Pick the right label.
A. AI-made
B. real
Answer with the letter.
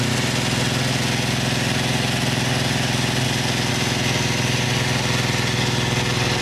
B